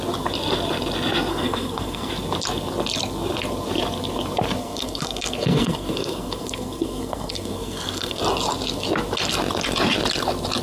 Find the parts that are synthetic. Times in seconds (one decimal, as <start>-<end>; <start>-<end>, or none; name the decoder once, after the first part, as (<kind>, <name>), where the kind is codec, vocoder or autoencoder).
1.3-2.1 (codec, SNAC); 4.6-8.2

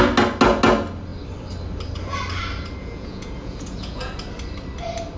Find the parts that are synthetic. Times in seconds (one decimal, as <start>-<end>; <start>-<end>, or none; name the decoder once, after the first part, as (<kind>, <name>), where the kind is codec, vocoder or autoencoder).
2.8-4.1 (vocoder, Vocos)